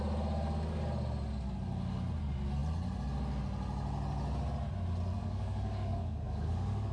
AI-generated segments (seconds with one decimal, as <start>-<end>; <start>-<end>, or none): 5.2-6.9